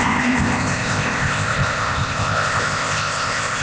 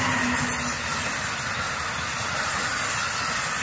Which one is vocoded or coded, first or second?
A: first